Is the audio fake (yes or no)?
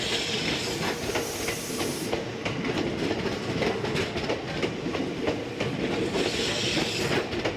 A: no